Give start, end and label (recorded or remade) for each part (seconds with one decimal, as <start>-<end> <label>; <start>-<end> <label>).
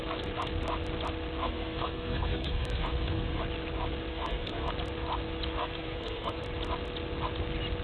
0.0-1.4 recorded; 1.4-3.4 remade; 3.4-4.1 recorded; 4.1-4.7 remade; 4.7-5.6 recorded; 5.6-6.4 remade; 6.4-7.8 recorded